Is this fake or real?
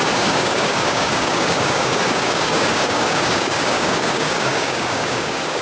fake